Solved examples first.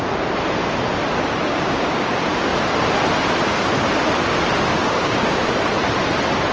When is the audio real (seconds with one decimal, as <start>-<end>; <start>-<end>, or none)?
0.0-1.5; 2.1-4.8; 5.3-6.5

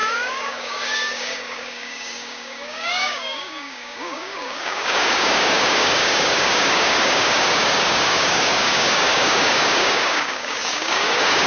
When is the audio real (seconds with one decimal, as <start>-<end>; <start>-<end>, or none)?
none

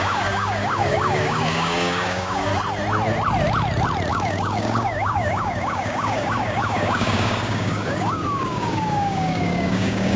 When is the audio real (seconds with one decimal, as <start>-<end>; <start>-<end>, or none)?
2.5-4.1